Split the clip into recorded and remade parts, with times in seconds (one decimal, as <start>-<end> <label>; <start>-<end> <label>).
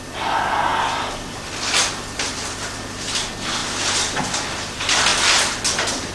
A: 0.0-6.1 recorded